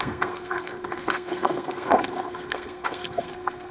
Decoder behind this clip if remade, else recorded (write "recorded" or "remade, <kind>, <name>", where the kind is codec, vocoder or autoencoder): remade, codec, SNAC